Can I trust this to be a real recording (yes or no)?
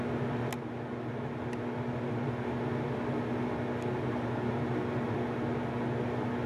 yes